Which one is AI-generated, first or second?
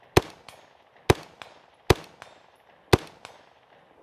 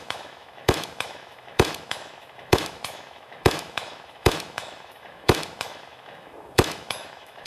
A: second